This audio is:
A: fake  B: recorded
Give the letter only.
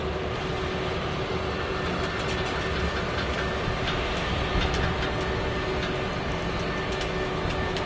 B